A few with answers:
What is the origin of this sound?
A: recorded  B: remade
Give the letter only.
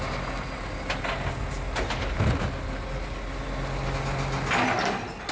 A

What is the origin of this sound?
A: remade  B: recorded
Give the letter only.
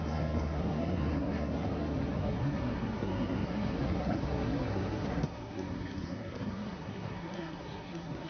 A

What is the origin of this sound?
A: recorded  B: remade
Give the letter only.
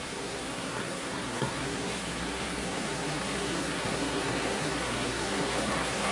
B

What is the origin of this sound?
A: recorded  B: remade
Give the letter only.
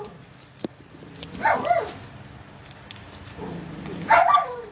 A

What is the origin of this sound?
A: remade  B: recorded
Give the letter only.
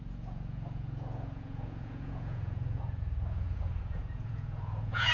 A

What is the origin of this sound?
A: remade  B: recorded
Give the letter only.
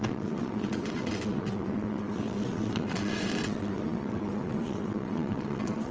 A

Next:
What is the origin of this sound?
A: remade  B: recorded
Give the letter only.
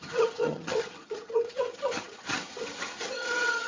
A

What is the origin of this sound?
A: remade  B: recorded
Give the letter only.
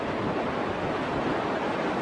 B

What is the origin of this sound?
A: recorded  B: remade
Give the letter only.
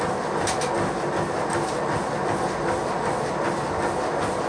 A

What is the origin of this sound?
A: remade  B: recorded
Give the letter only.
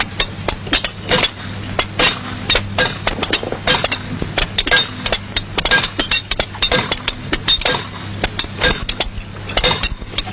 B